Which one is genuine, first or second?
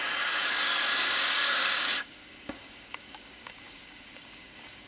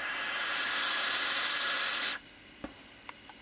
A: second